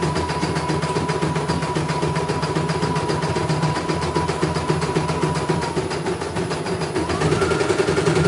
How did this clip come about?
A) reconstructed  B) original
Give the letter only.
B